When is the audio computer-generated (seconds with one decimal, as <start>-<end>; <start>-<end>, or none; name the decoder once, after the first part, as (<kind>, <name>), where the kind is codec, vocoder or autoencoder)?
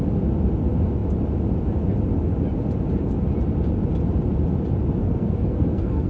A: 5.0-6.1 (codec, SNAC)